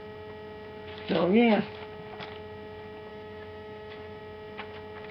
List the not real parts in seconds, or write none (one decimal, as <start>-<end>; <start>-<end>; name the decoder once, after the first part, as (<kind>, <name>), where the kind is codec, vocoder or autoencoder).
0.9-1.6 (autoencoder, DAC-VAE); 3.1-4.2

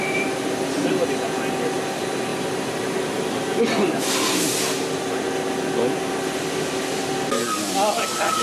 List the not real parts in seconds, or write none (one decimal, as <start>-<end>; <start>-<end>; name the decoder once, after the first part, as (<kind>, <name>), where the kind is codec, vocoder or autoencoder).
none

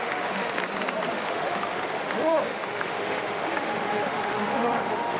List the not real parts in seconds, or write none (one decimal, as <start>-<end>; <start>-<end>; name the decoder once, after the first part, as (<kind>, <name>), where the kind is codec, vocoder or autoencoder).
0.0-0.6 (autoencoder, DAC-VAE); 1.1-5.2

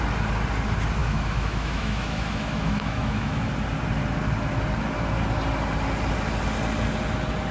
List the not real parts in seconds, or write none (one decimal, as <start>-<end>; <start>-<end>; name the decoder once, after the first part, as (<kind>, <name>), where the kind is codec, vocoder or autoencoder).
1.0-3.5 (autoencoder, DAC-VAE)

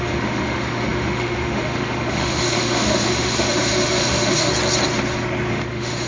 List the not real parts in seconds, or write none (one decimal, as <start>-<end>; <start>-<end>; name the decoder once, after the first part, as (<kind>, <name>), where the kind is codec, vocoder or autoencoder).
0.0-4.5 (autoencoder, DAC-VAE); 5.5-6.1

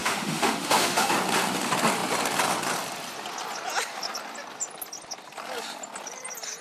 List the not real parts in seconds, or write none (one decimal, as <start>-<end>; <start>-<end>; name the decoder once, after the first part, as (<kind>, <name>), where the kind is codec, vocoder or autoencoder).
0.0-1.1 (autoencoder, DAC-VAE)

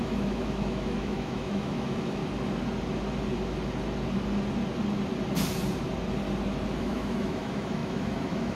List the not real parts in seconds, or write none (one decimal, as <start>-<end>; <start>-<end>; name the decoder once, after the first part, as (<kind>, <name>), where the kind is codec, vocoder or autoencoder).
0.0-2.2 (autoencoder, DAC-VAE); 6.8-8.5

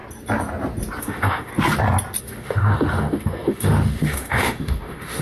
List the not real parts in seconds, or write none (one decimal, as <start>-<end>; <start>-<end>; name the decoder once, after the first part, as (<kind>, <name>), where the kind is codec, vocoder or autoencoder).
1.0-1.5 (autoencoder, DAC-VAE); 2.2-5.2